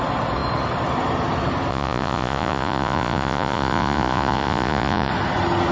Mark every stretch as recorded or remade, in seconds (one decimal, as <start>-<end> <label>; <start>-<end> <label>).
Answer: 0.0-1.7 recorded; 1.7-5.1 remade; 5.1-5.7 recorded